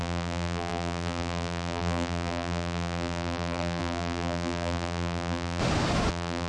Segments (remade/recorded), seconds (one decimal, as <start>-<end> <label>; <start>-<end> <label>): 0.0-5.6 remade; 5.6-6.1 recorded; 6.1-6.5 remade